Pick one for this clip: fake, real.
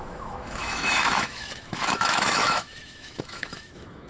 fake